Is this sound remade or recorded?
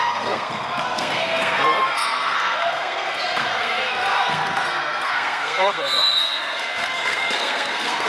remade